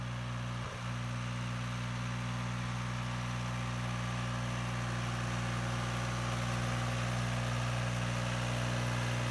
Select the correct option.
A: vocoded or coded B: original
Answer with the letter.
B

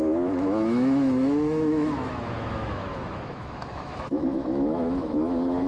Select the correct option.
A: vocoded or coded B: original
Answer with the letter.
A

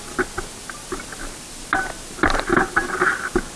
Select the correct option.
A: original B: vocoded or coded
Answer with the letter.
A